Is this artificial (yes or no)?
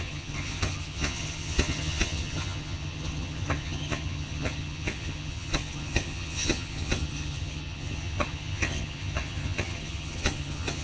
yes